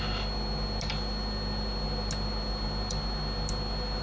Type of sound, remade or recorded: recorded